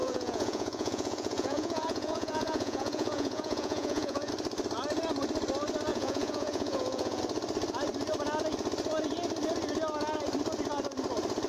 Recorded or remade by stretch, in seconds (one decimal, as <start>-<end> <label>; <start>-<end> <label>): 0.0-4.3 remade; 4.3-5.9 recorded; 5.9-7.2 remade; 7.2-11.5 recorded

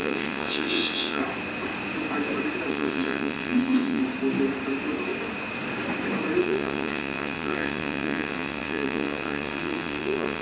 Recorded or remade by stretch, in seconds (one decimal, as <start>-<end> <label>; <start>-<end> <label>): 0.0-1.2 remade; 1.2-2.7 recorded; 2.7-4.0 remade; 4.0-6.4 recorded; 6.4-10.4 remade

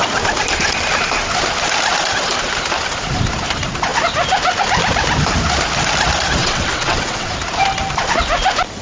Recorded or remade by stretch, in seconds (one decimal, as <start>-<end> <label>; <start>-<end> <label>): 0.0-6.4 recorded; 6.4-7.3 remade; 7.3-8.8 recorded

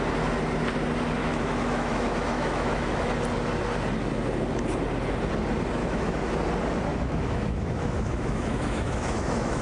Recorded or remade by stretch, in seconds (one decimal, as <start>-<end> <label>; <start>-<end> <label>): 0.0-1.2 recorded; 1.2-3.1 remade; 3.1-5.8 recorded; 5.8-6.3 remade; 6.3-6.9 recorded; 6.9-9.6 remade

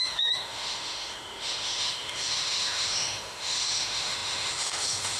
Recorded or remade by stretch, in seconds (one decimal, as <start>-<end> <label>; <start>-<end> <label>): 0.0-5.2 remade

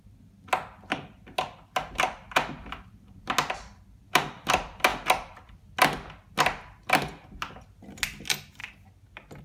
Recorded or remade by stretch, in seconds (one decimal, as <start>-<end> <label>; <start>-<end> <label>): 0.0-9.4 recorded